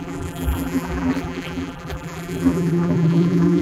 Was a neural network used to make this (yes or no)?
yes